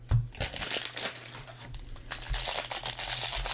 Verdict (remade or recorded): recorded